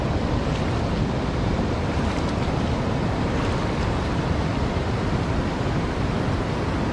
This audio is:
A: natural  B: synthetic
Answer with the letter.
A